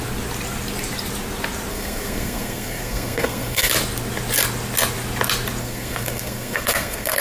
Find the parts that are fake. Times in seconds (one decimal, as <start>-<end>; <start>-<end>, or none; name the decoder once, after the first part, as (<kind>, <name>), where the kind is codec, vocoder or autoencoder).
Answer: 1.7-3.7 (codec, SNAC); 5.6-7.2